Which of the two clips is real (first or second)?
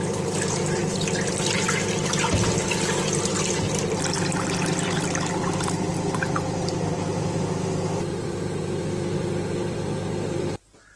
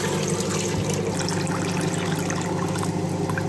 second